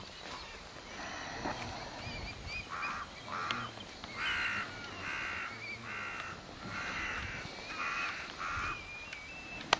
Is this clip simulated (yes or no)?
no